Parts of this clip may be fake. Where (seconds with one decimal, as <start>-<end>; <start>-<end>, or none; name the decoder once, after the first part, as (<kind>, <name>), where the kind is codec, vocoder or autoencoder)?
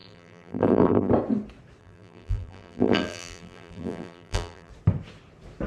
0.0-1.1 (vocoder, BigVGAN v2); 1.8-4.7